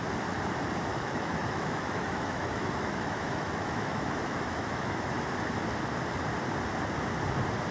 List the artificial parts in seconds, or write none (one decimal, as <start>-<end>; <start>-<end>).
0.9-5.1

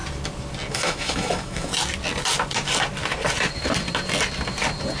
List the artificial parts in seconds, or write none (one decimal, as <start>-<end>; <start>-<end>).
0.7-1.7

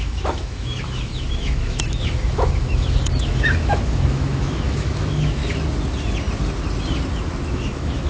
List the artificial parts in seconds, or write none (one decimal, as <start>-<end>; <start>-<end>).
0.0-5.4; 7.5-8.1

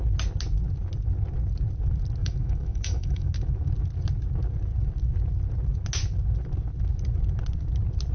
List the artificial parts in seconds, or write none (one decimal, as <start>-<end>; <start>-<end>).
2.2-3.3